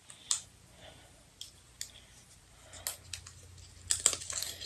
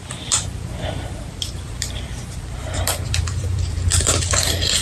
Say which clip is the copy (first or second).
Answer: second